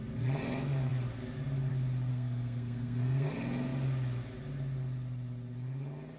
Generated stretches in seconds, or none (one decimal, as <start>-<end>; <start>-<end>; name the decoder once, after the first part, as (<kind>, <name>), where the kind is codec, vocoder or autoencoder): 2.1-3.3 (codec, SNAC)